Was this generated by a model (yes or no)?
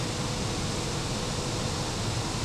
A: no